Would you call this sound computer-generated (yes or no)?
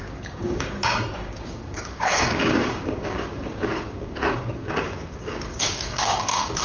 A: yes